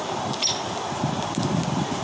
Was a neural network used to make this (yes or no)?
no